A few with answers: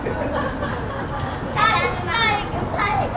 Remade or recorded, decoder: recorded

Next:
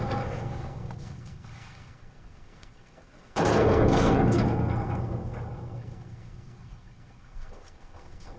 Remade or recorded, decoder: remade, codec, SNAC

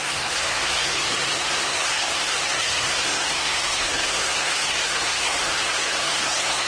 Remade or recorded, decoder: remade, codec, SNAC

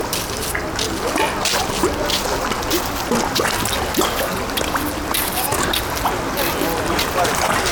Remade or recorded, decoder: recorded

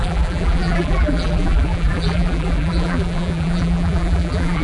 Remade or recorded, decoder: remade, vocoder, BigVGAN v2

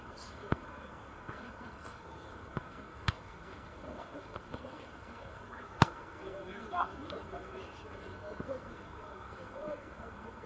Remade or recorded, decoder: remade, codec, SNAC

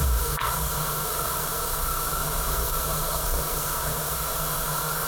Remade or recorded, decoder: remade, codec, SNAC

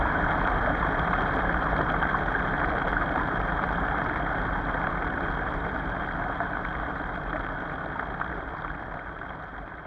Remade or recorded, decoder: recorded